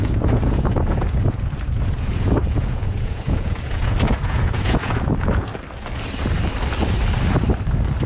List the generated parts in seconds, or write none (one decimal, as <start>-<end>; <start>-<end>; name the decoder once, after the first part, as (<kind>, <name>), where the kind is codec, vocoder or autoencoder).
0.0-5.5 (vocoder, Vocos)